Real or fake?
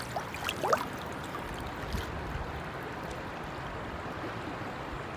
real